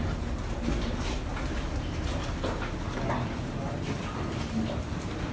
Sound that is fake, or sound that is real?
real